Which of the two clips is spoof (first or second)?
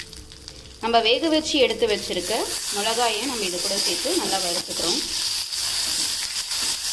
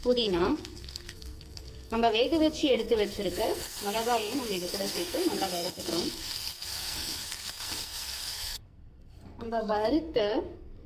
second